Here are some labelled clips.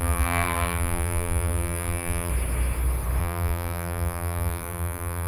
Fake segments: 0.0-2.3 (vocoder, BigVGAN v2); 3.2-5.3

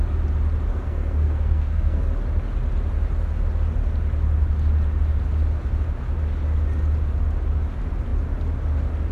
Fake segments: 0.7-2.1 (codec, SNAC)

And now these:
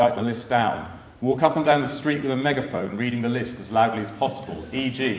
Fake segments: 0.0-3.1 (vocoder, Vocos)